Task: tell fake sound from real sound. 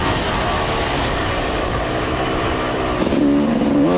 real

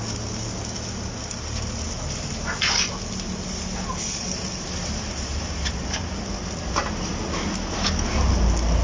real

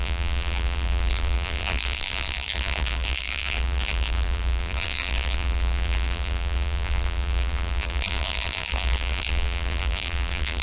fake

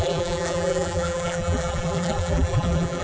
fake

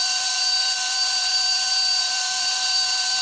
fake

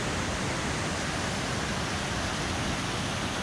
real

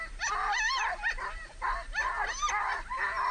fake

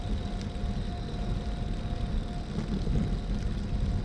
real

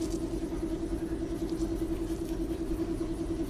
real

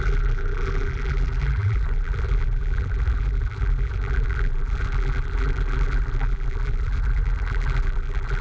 fake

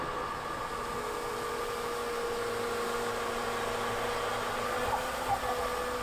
real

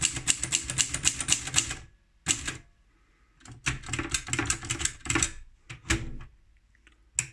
real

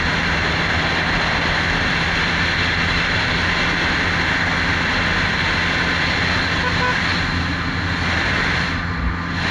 real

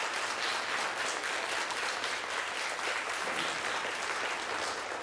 real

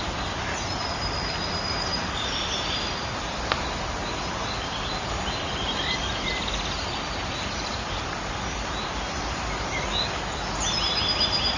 fake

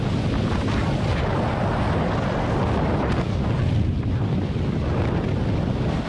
fake